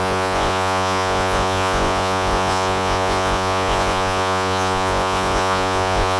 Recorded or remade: remade